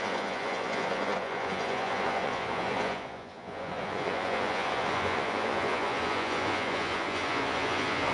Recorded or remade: remade